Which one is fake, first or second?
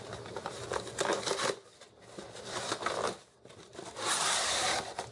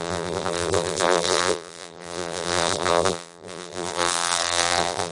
second